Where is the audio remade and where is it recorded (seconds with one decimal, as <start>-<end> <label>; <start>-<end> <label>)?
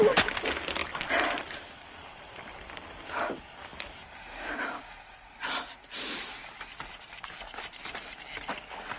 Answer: 0.0-0.8 recorded; 0.8-3.3 remade; 3.3-3.7 recorded; 3.7-8.2 remade; 8.2-9.0 recorded